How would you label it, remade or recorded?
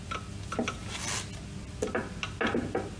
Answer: recorded